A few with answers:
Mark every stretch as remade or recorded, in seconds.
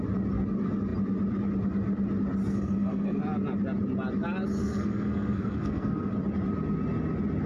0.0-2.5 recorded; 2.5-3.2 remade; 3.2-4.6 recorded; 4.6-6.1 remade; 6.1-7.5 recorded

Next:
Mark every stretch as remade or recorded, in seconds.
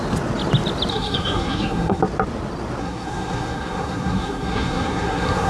0.0-0.9 recorded; 0.9-2.0 remade; 2.0-2.8 recorded; 2.8-5.5 remade